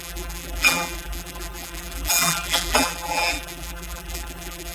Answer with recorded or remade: remade